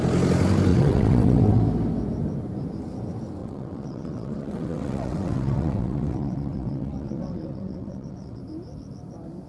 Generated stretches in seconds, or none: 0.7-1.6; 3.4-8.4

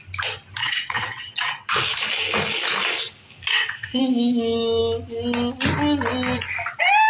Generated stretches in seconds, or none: 0.6-1.7; 3.5-4.0

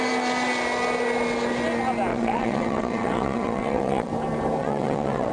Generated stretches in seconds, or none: 2.1-4.1; 4.6-5.3

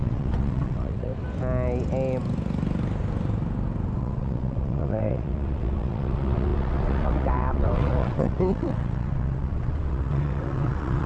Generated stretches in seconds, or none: 0.0-1.1; 4.0-11.1

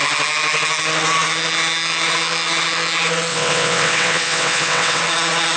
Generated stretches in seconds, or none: 3.3-5.0

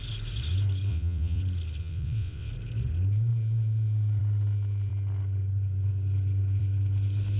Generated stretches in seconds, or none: 0.9-1.4; 1.8-2.5

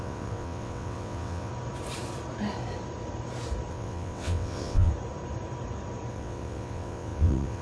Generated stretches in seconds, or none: 0.0-1.5; 3.7-4.9; 6.1-7.6